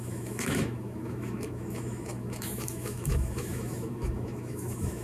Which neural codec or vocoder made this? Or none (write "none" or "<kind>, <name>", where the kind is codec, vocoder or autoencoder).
autoencoder, DAC-VAE